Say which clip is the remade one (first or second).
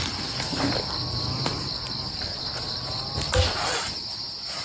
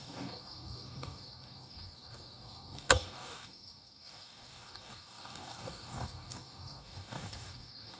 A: second